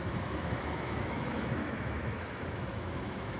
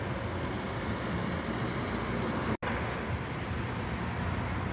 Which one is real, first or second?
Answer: second